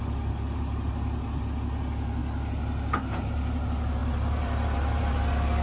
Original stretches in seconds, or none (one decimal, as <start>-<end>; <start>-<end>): 0.0-4.0; 5.0-5.6